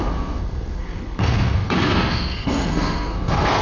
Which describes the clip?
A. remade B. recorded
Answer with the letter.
A